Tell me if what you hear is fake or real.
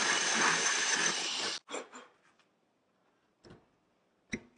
real